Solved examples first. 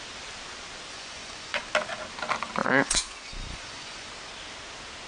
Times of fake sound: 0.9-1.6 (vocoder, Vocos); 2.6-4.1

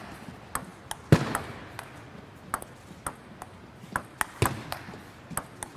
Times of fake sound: none

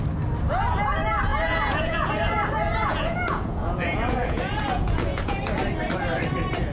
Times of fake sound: 1.3-2.1 (vocoder, Vocos); 2.8-5.4

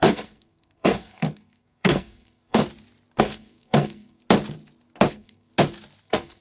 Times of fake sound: 0.0-2.6 (codec, SNAC); 3.2-4.2; 5.1-5.5; 6.0-6.4